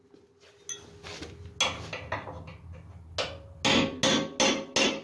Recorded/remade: recorded